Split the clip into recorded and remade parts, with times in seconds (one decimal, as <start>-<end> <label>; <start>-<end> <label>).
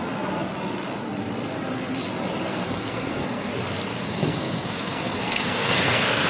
0.0-2.5 recorded; 2.5-3.5 remade; 3.5-3.9 recorded; 3.9-6.3 remade